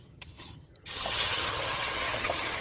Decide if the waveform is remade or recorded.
remade